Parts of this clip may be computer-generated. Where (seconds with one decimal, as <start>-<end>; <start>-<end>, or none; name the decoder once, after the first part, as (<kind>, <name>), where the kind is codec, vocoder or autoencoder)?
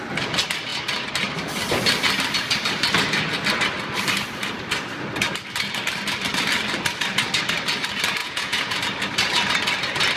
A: 8.2-8.8 (vocoder, Vocos)